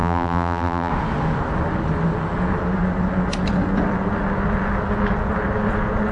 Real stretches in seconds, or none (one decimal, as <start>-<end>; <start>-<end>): 0.9-6.1